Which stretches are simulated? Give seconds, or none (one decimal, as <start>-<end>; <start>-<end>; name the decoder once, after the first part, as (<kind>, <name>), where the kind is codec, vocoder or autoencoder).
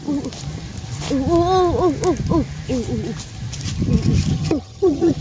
4.3-5.2 (vocoder, HiFi-GAN)